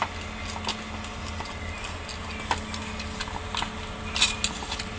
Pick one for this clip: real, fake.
real